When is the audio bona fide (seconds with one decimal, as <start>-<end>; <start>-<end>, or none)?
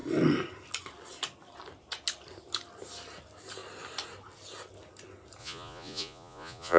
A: 0.0-5.4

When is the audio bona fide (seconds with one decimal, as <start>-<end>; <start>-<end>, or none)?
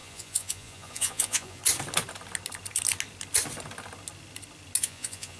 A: 1.6-4.8